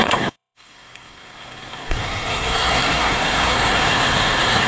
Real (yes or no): no